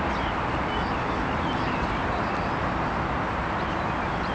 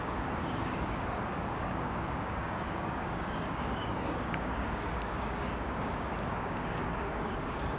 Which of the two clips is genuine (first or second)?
first